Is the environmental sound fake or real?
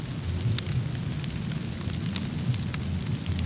real